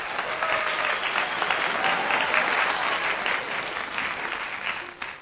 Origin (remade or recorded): recorded